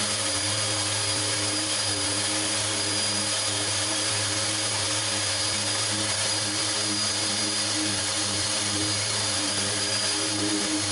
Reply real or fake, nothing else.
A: fake